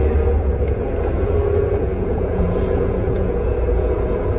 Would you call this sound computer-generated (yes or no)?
yes